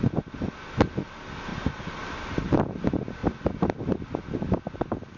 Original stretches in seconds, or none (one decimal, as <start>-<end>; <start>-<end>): 0.0-1.5; 2.0-5.2